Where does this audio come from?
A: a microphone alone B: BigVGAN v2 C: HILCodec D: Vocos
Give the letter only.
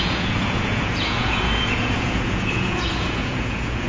D